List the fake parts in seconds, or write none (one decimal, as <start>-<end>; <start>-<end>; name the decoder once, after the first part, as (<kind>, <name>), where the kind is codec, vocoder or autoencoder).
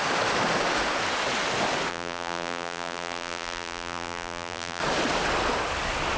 1.9-4.8 (vocoder, BigVGAN v2)